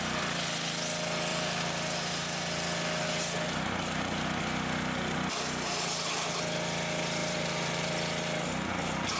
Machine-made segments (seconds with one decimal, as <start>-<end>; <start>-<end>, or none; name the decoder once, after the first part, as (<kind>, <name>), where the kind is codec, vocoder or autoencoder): 1.3-2.4 (vocoder, BigVGAN v2); 7.2-7.9